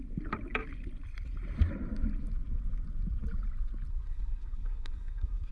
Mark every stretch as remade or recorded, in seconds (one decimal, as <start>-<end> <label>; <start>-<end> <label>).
0.0-3.9 recorded; 3.9-5.5 remade